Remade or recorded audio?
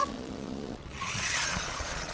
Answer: remade